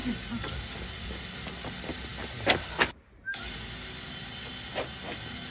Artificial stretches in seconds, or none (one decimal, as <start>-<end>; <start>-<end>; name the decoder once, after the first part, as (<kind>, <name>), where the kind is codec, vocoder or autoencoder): none